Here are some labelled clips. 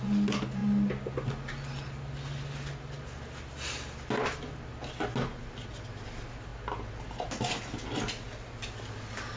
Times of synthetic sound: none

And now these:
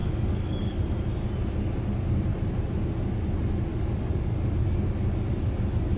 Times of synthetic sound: 0.0-0.8; 3.7-4.4

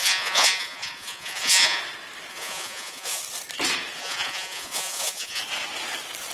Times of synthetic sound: 0.0-1.8; 2.3-3.2; 4.0-5.4

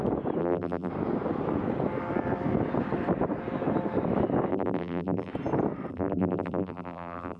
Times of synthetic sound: 0.4-0.9; 4.5-5.3; 5.9-7.4

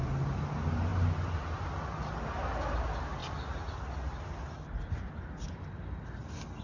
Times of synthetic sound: none

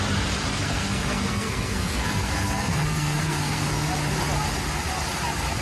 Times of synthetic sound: 0.5-3.9

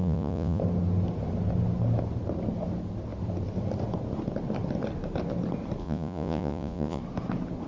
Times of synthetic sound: 0.0-0.6; 5.8-7.0